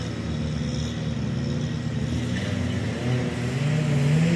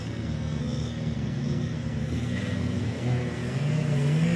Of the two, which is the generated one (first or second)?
second